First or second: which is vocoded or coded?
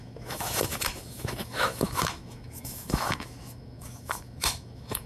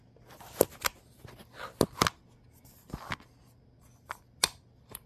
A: first